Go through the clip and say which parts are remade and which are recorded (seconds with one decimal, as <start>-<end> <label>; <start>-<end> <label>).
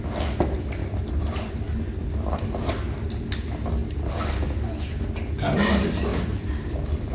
0.0-0.8 recorded; 0.8-2.7 remade; 2.7-6.1 recorded; 6.1-7.1 remade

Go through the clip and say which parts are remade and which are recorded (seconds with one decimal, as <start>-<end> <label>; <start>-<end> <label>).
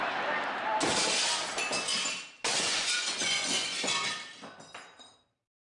0.0-2.5 recorded; 2.5-4.1 remade; 4.1-5.6 recorded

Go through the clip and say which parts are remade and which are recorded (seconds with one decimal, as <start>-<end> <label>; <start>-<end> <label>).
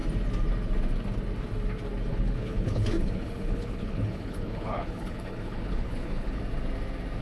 0.0-2.1 recorded; 2.1-6.4 remade; 6.4-7.2 recorded